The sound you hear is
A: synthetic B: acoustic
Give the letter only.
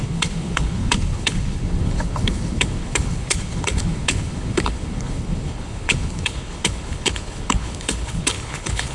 A